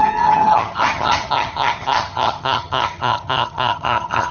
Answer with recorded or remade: remade